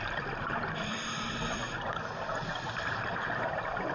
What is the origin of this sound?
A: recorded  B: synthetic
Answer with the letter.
A